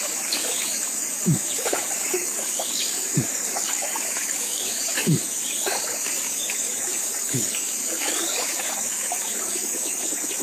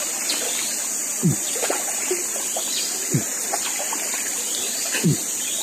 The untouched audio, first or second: second